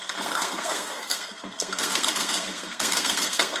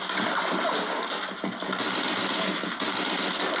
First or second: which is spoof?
first